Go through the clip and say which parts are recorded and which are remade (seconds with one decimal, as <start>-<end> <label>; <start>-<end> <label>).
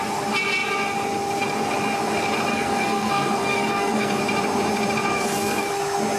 0.0-2.5 recorded; 2.5-4.2 remade; 4.2-5.1 recorded; 5.1-5.7 remade; 5.7-6.2 recorded